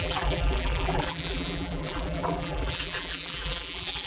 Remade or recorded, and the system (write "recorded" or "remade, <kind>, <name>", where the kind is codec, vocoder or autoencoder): remade, vocoder, BigVGAN v2